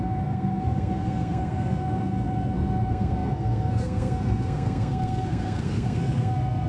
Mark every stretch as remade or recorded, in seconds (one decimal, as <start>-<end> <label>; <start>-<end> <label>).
0.0-6.7 remade